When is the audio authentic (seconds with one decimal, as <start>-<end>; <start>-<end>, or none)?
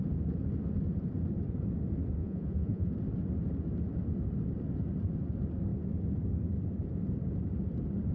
0.0-2.2; 2.9-8.1